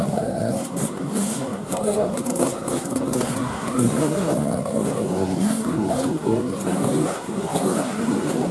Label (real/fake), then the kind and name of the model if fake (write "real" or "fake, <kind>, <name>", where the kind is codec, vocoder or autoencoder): fake, codec, SNAC